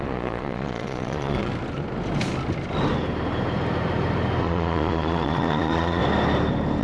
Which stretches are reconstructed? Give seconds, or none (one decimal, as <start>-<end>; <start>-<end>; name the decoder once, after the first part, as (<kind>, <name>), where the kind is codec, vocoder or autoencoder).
0.0-1.5 (vocoder, Vocos); 4.4-6.0